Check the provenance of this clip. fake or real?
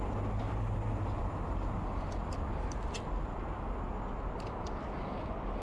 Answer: real